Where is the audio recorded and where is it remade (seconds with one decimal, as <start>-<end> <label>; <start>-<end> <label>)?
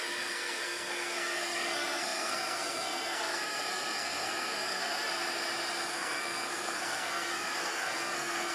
0.0-5.1 remade; 5.1-5.9 recorded; 5.9-8.5 remade